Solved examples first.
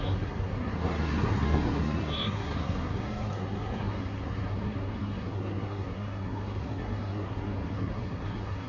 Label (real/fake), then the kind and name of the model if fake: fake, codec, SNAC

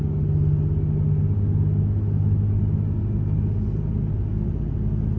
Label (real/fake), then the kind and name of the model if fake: real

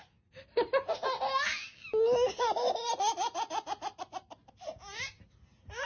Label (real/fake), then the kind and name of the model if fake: real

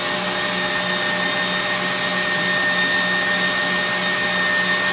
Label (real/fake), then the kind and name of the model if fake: real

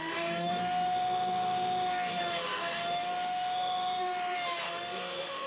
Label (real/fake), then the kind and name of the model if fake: fake, autoencoder, DAC-VAE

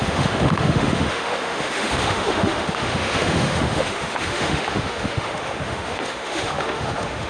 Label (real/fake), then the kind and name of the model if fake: fake, autoencoder, DAC-VAE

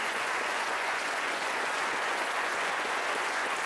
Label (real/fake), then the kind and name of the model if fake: fake, vocoder, Vocos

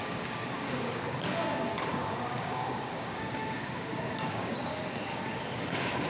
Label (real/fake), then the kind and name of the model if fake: fake, codec, DAC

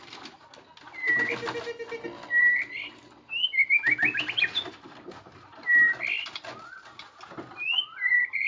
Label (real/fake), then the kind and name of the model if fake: real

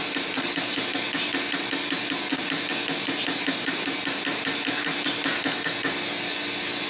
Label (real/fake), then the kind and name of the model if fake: real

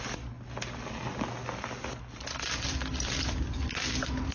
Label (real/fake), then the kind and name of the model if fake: real